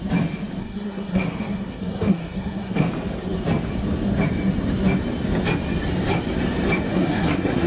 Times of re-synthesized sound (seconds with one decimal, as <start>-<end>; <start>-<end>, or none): 0.6-2.9; 6.9-7.7